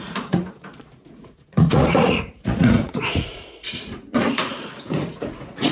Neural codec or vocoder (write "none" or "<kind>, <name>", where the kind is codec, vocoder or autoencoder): vocoder, Vocos